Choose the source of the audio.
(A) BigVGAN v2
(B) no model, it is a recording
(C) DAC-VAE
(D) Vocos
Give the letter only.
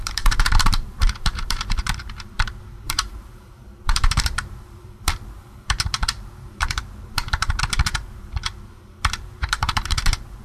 A